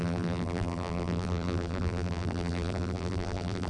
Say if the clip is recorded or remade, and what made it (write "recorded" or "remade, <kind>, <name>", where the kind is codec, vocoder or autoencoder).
remade, vocoder, BigVGAN v2